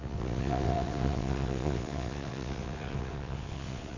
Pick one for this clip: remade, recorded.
remade